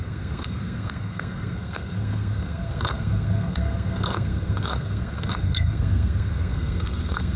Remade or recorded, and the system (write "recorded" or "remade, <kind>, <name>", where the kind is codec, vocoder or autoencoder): remade, codec, SNAC